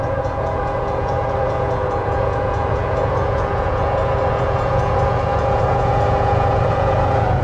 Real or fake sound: fake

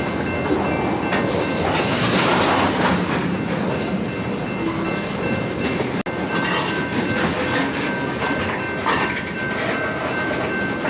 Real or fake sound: real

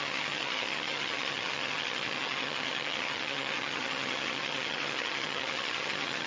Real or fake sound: fake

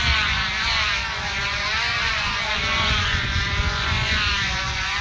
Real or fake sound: fake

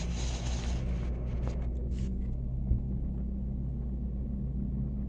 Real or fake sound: real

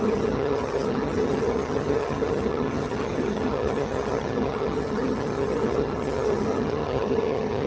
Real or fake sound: fake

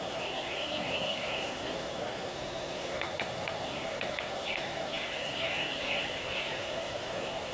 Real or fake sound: fake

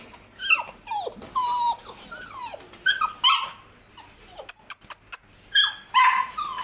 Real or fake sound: real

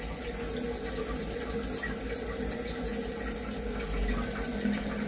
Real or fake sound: real